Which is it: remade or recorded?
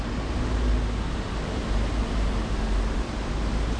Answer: recorded